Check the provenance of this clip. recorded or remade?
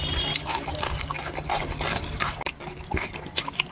recorded